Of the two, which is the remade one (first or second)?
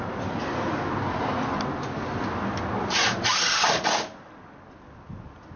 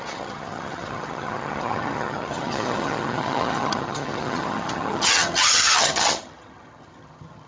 second